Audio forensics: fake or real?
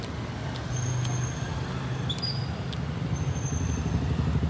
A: real